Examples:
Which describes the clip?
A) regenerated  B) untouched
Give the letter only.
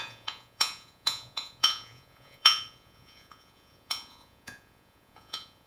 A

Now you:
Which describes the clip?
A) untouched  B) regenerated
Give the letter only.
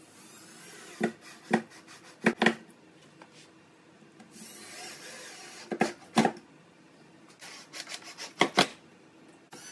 A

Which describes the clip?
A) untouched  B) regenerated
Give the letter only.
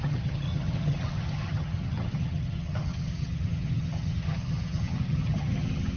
B